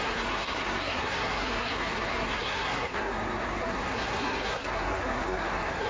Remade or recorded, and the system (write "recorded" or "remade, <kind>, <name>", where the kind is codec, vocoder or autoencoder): remade, codec, SNAC